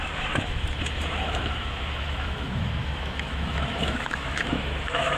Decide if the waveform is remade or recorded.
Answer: remade